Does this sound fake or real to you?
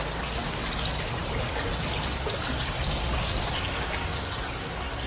real